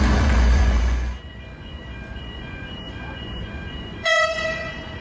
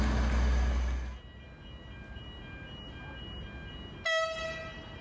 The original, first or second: second